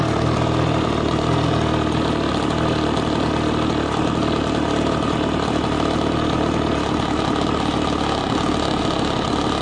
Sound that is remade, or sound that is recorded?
recorded